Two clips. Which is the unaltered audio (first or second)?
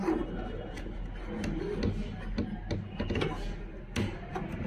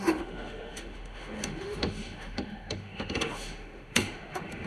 first